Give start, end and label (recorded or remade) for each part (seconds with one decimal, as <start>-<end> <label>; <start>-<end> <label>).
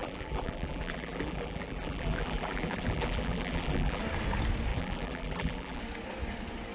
0.0-4.0 remade; 4.0-4.7 recorded; 4.7-5.8 remade; 5.8-6.7 recorded